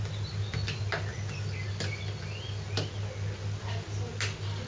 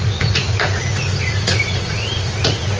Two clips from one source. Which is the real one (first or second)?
first